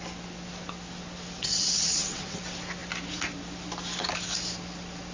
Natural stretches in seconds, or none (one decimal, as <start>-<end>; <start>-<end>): 0.0-1.4; 2.4-5.1